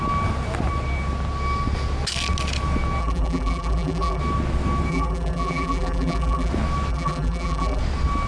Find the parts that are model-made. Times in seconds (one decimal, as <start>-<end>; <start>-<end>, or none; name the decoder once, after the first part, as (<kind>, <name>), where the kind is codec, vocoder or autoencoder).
3.0-4.2 (vocoder, BigVGAN v2); 4.9-6.5; 6.9-7.8